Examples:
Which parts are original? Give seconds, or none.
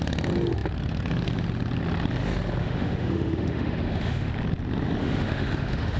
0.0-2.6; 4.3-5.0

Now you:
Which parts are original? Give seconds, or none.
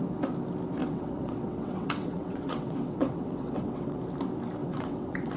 0.0-0.8; 4.0-4.6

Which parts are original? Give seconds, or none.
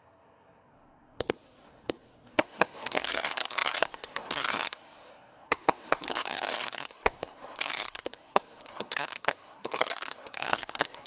none